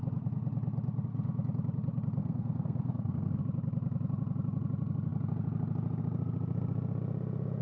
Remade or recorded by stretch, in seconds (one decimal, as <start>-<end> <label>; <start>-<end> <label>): 0.0-2.2 recorded; 2.2-3.4 remade; 3.4-7.6 recorded